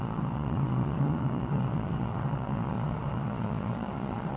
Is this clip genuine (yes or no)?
no